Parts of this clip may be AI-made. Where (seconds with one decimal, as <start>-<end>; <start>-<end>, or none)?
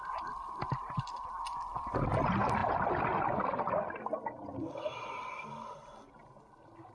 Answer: none